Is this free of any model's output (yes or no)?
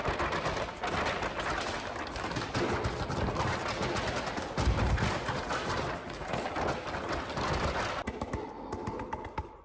yes